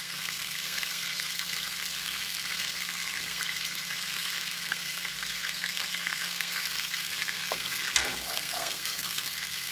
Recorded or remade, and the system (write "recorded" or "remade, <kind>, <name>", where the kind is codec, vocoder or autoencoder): remade, codec, SNAC